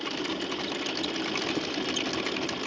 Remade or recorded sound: recorded